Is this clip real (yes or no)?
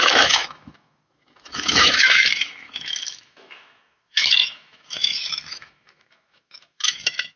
no